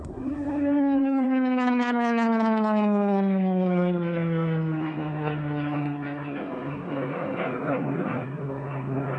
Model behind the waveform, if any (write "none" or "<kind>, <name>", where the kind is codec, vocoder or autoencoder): codec, SNAC